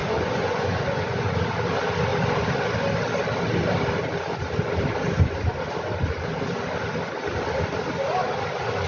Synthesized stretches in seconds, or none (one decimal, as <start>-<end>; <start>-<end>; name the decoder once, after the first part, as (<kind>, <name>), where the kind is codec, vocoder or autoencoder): 0.0-1.3 (vocoder, Vocos)